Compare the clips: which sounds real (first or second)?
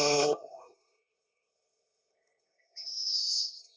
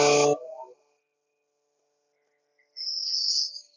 second